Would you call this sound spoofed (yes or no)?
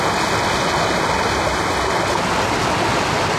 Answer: no